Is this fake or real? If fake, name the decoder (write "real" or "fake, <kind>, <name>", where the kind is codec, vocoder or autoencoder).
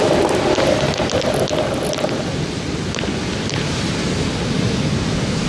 fake, vocoder, BigVGAN v2